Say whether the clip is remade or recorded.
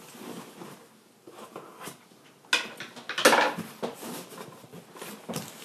recorded